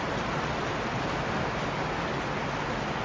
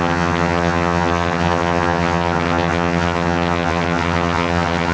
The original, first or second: first